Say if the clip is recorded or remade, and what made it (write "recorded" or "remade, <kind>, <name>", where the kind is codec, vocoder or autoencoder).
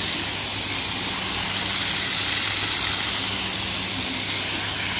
recorded